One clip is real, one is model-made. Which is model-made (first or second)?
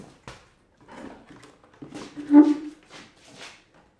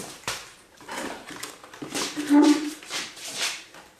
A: second